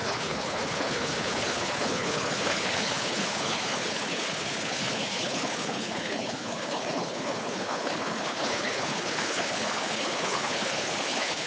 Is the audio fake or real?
fake